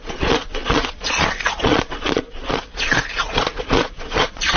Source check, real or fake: fake